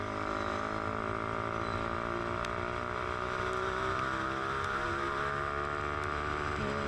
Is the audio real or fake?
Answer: real